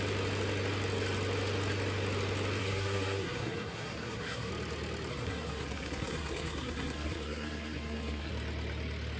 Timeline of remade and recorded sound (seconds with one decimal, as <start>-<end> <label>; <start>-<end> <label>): 0.0-2.6 recorded; 2.6-4.5 remade; 4.5-5.1 recorded; 5.1-8.3 remade; 8.3-9.2 recorded